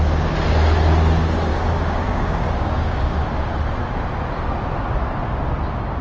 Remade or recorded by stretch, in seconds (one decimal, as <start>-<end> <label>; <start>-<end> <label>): 0.0-1.5 recorded; 1.5-3.2 remade; 3.2-6.0 recorded

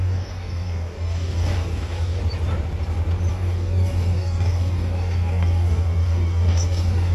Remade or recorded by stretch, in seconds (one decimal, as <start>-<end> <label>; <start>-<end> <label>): 0.0-2.2 remade; 2.2-3.3 recorded; 3.3-7.1 remade

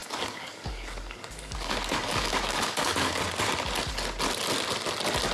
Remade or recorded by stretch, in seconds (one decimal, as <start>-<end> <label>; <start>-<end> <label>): 0.0-3.2 remade; 3.2-5.3 recorded